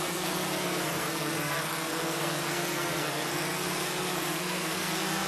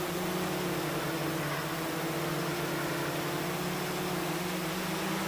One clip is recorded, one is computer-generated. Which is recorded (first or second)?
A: second